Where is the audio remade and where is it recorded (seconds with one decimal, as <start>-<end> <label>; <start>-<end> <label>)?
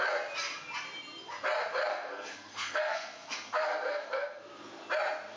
0.0-1.9 recorded; 1.9-4.4 remade; 4.4-5.4 recorded